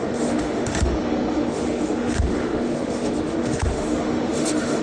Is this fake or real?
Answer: fake